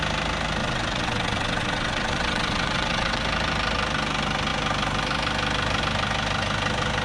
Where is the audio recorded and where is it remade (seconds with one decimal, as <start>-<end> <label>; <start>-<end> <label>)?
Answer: 0.0-0.6 recorded; 0.6-3.2 remade; 3.2-7.0 recorded